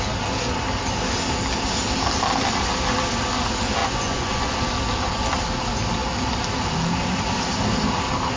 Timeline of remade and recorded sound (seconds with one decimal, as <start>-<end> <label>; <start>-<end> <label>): 0.0-3.8 recorded; 3.8-4.5 remade; 4.5-8.4 recorded